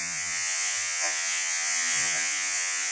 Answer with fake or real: fake